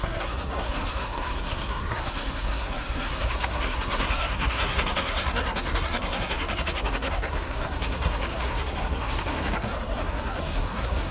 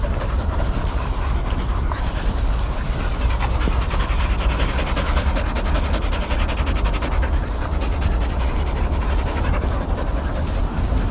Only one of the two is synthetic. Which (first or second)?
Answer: first